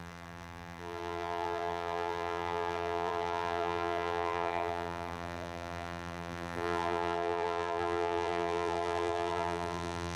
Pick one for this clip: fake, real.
fake